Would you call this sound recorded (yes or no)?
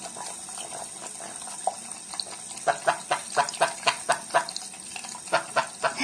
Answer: yes